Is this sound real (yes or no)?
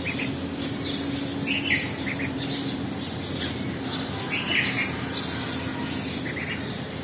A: yes